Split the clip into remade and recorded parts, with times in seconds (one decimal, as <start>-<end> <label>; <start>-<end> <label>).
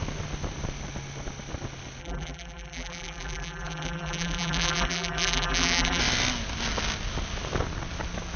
0.0-2.0 recorded; 2.0-6.0 remade; 6.0-8.4 recorded